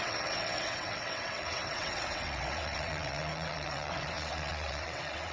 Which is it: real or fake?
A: fake